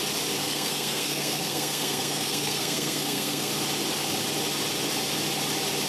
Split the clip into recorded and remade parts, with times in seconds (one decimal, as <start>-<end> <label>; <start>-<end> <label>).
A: 0.0-0.4 recorded; 0.4-3.5 remade; 3.5-5.9 recorded